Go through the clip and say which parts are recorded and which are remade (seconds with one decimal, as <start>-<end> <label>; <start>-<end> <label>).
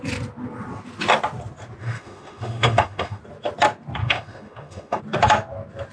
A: 0.0-1.8 recorded; 1.8-3.2 remade; 3.2-4.0 recorded; 4.0-5.0 remade; 5.0-5.9 recorded